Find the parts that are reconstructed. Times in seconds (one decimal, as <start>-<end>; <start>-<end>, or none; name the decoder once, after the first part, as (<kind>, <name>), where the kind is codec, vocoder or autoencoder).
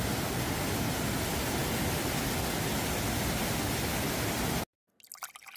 none